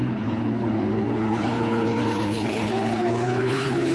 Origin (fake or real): fake